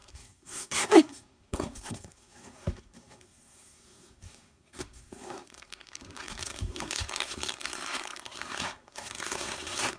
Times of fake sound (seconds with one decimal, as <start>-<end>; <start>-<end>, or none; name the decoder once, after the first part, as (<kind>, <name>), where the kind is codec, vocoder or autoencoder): 0.0-10.0 (codec, SNAC)